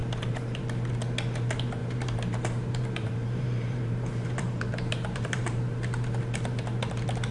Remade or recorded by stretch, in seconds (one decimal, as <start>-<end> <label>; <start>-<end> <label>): 0.0-0.6 remade; 0.6-1.8 recorded; 1.8-6.2 remade; 6.2-7.3 recorded